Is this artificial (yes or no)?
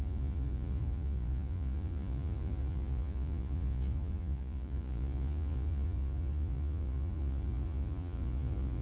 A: yes